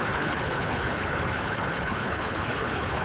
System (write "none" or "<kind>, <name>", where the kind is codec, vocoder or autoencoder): codec, HILCodec